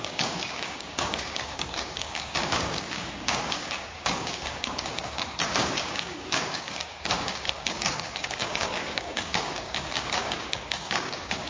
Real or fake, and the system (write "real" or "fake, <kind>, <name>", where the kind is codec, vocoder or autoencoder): fake, codec, DAC